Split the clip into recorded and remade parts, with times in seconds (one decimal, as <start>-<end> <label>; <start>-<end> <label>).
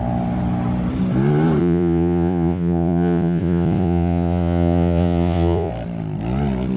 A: 0.0-1.6 recorded; 1.6-5.7 remade; 5.7-6.8 recorded